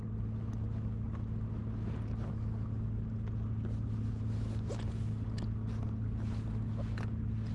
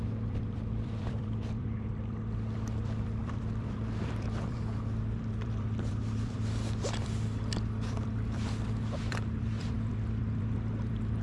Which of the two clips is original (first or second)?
first